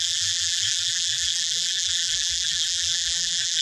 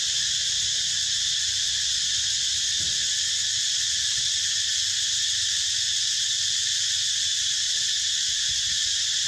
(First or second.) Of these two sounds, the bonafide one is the second